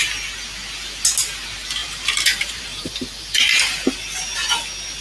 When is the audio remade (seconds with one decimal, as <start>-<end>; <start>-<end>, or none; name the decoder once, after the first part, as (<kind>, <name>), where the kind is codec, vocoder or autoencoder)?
1.8-3.6 (vocoder, BigVGAN v2)